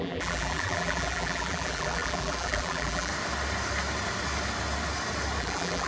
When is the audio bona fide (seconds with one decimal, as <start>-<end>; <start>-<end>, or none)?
3.1-5.4